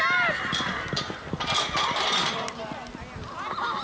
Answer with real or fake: real